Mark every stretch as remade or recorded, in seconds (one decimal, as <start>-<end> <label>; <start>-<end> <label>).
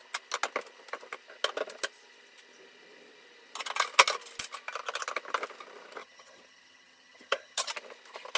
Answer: 0.0-6.0 recorded; 6.0-7.7 remade; 7.7-8.4 recorded